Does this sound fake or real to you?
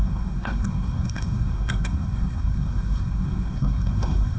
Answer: fake